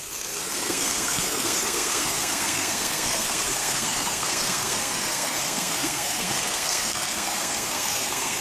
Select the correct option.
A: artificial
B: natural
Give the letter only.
A